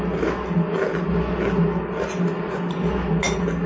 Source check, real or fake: real